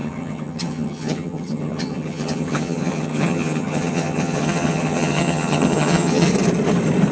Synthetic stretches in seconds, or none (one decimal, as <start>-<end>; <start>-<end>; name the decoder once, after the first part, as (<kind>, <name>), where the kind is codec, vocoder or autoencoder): 0.0-6.3 (vocoder, HiFi-GAN)